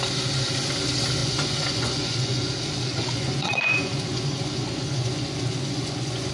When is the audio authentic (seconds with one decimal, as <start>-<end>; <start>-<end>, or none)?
0.0-1.2; 2.5-3.0